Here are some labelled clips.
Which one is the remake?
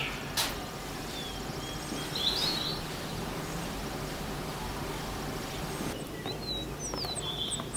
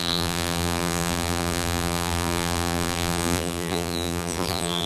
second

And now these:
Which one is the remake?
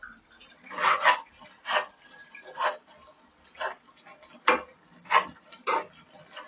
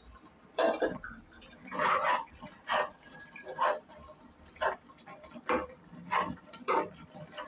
second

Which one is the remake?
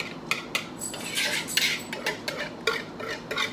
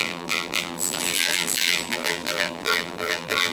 second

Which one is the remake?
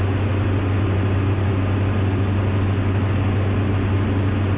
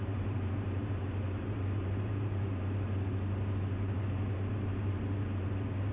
second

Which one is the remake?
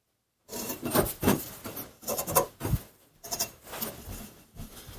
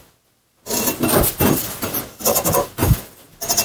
first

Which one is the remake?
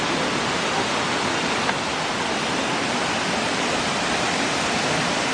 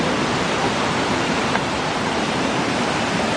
second